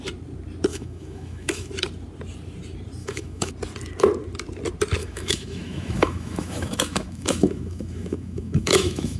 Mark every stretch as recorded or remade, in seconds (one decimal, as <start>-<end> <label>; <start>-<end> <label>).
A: 0.0-0.7 recorded; 0.7-1.7 remade; 1.7-3.0 recorded; 3.0-3.5 remade; 3.5-5.0 recorded; 5.0-9.2 remade